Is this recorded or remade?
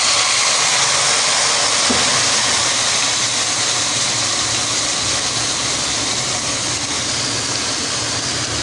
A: recorded